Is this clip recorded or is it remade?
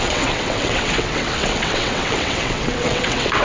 remade